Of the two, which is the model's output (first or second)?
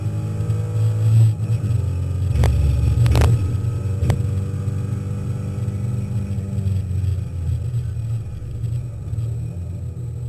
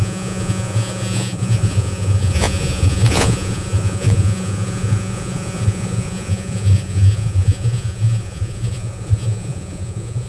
second